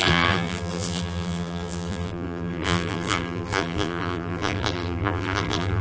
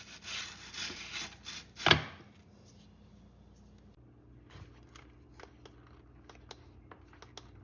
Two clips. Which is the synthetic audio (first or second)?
first